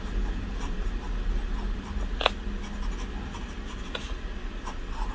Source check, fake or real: real